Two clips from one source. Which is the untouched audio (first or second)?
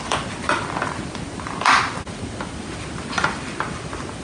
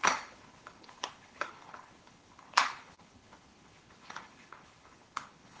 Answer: first